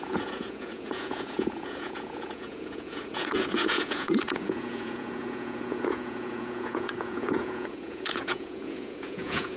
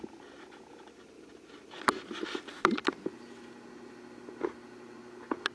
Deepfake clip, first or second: first